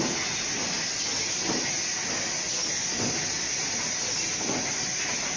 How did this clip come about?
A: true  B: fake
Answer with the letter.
A